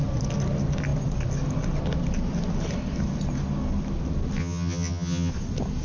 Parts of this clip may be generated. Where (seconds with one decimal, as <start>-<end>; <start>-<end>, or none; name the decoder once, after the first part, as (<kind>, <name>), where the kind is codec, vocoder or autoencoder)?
4.4-5.3 (vocoder, HiFi-GAN)